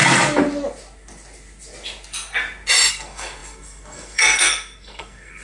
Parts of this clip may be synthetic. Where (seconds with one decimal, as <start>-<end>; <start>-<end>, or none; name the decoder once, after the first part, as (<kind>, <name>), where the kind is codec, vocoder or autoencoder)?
2.9-5.4 (codec, SNAC)